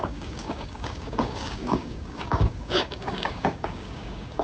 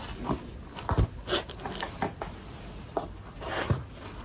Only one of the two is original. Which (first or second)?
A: second